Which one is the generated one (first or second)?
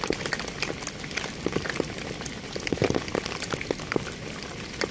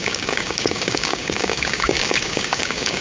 second